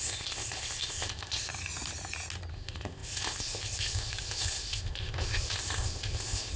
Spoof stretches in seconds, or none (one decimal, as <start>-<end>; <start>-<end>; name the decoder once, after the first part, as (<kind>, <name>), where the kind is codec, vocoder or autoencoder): 0.0-1.5 (codec, ZipCodec); 2.5-6.6